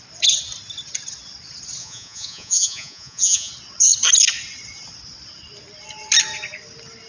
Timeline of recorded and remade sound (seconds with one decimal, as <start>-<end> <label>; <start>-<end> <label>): 0.0-1.8 recorded; 1.8-3.5 remade; 3.5-7.1 recorded